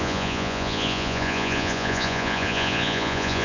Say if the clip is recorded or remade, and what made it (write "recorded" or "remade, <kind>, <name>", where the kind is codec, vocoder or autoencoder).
remade, vocoder, Vocos